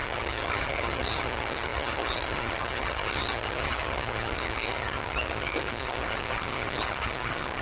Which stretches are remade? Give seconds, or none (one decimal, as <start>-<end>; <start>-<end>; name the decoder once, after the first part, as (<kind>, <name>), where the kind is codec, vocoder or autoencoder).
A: 0.0-7.6 (vocoder, HiFi-GAN)